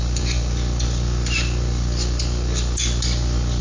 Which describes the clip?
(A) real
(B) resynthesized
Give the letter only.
A